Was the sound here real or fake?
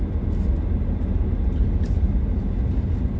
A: real